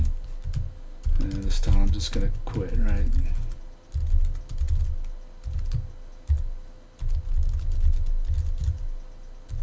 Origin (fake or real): real